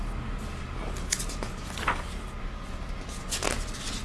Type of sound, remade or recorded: recorded